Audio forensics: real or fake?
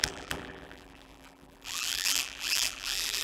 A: fake